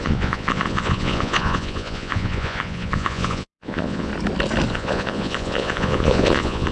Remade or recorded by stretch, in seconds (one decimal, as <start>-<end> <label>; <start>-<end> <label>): 0.0-4.1 remade; 4.1-4.7 recorded; 4.7-6.7 remade